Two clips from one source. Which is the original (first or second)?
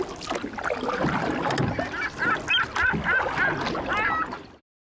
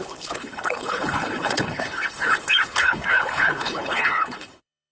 first